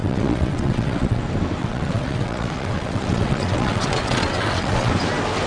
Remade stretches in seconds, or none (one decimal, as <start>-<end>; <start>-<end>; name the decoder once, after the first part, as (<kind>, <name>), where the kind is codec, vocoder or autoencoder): 0.0-1.2 (vocoder, WaveNeXt); 1.6-4.9